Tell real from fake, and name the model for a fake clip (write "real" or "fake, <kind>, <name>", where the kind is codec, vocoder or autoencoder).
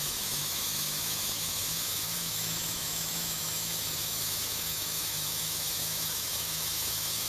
fake, autoencoder, DAC-VAE